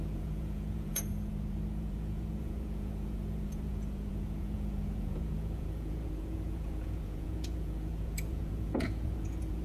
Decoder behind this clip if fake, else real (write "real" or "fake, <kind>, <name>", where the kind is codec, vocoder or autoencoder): fake, vocoder, Vocos